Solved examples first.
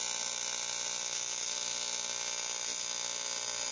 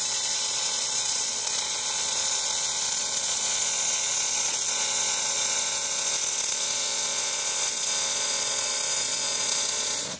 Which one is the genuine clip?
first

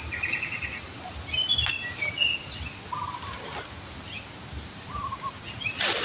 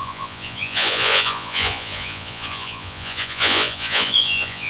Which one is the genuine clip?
first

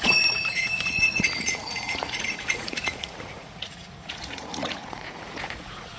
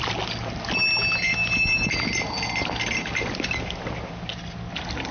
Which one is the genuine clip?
second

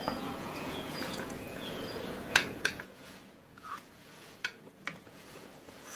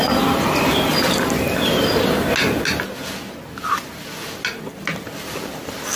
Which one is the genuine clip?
second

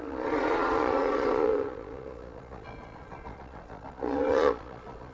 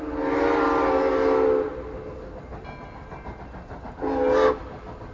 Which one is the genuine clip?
second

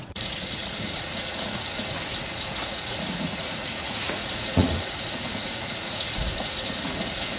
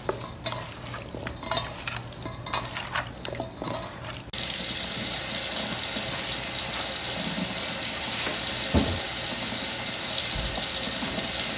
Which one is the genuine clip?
second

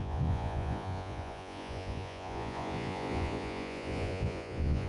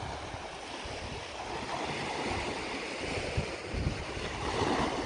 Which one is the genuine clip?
second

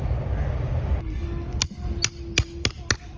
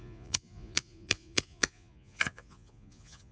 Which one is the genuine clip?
first